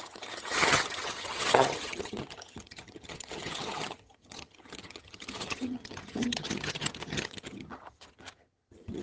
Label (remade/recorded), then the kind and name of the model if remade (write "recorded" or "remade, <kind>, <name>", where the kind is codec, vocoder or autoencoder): remade, vocoder, HiFi-GAN